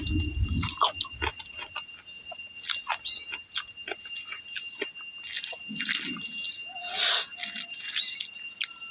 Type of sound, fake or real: real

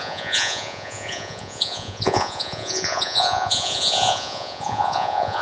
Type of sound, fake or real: fake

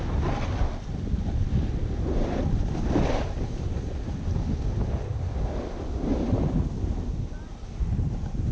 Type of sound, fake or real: real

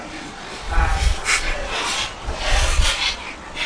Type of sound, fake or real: fake